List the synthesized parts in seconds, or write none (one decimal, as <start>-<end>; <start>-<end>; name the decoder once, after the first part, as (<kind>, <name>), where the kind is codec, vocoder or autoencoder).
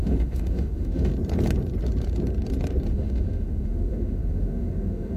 0.0-1.1 (autoencoder, DAC-VAE); 2.9-5.2